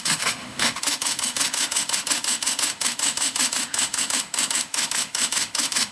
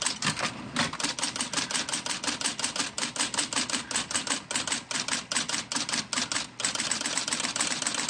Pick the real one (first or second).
second